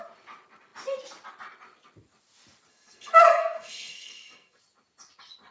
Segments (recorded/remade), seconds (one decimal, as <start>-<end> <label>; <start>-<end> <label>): 0.0-2.7 recorded; 2.7-4.6 remade; 4.6-5.5 recorded